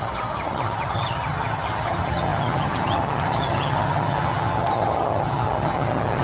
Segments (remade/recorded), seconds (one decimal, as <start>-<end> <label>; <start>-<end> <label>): 0.0-6.2 remade